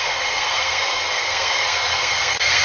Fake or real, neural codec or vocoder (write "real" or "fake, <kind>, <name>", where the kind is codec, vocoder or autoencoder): fake, codec, SNAC